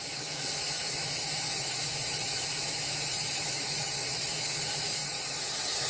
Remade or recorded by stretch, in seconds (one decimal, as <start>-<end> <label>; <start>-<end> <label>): 0.0-5.9 remade